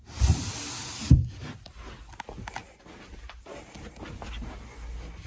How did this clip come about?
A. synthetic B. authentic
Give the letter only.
B